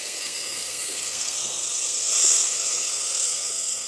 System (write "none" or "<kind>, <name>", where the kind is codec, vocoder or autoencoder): codec, SNAC